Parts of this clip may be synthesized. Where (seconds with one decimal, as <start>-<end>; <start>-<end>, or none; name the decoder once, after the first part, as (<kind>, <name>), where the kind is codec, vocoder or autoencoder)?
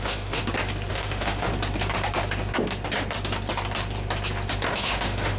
0.0-0.4 (autoencoder, DAC-VAE); 0.9-1.5; 4.7-5.4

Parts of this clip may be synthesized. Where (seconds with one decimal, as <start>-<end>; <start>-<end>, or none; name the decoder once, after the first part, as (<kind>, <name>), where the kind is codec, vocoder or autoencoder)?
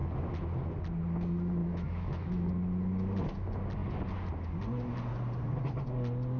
1.6-2.5 (autoencoder, DAC-VAE)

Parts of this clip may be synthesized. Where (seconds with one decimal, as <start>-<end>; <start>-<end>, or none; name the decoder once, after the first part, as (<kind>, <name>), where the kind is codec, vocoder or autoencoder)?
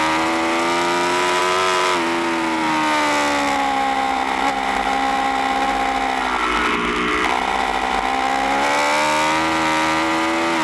none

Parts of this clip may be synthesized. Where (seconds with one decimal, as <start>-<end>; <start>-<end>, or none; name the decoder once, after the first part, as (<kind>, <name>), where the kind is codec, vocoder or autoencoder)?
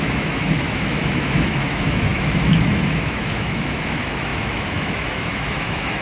0.0-6.0 (autoencoder, DAC-VAE)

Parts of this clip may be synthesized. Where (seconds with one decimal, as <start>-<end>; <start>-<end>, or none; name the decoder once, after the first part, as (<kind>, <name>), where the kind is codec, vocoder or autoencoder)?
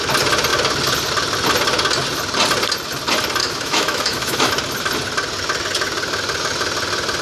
3.4-4.5 (autoencoder, DAC-VAE)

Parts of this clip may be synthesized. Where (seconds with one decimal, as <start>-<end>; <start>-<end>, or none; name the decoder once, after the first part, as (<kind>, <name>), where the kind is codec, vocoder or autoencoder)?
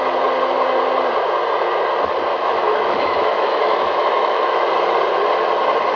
2.3-4.7 (autoencoder, DAC-VAE)